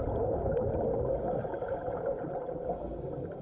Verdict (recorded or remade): recorded